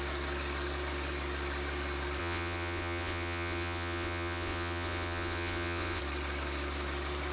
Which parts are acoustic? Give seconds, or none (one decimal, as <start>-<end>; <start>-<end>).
0.0-2.2; 6.0-7.3